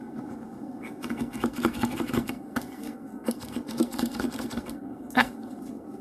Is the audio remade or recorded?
remade